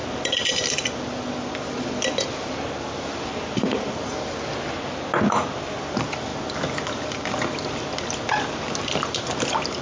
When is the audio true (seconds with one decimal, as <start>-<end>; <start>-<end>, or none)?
0.0-9.8